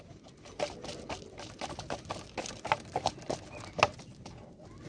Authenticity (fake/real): real